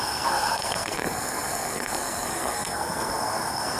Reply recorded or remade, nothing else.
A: remade